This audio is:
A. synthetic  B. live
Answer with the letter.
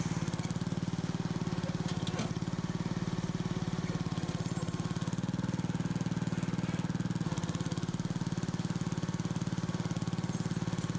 B